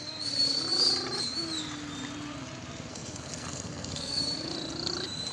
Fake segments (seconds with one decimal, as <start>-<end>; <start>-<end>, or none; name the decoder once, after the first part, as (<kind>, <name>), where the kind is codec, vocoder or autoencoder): 2.9-4.2 (codec, SNAC)